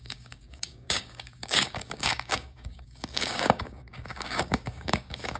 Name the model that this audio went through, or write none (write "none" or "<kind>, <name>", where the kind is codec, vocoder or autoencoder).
codec, DAC